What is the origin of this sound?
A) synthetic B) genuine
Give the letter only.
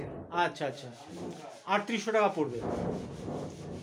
B